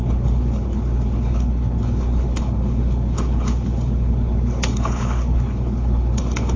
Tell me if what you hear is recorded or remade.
remade